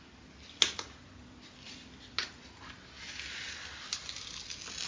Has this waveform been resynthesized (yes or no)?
no